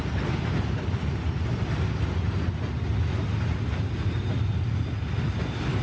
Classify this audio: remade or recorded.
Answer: recorded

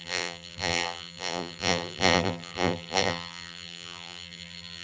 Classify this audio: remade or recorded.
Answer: remade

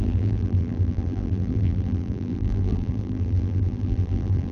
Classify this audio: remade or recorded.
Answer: remade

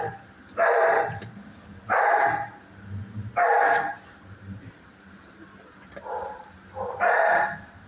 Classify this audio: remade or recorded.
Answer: remade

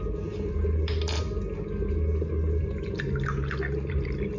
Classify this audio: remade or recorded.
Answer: recorded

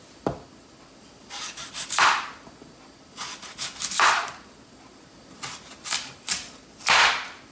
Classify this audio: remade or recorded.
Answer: recorded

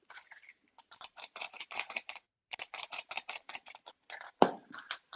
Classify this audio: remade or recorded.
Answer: remade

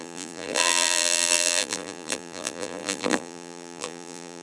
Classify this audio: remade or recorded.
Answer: remade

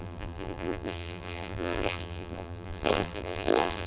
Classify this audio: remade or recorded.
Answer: remade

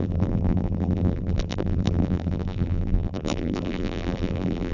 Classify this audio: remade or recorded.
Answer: remade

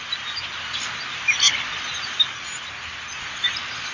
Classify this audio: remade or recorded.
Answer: recorded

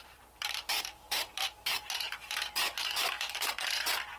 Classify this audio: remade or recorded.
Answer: remade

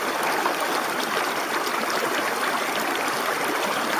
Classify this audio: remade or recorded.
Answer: remade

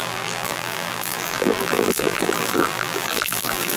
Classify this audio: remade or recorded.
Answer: remade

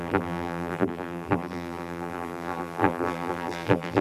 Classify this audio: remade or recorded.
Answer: remade